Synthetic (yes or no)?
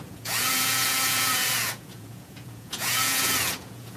yes